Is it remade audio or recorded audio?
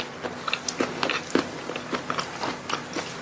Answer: recorded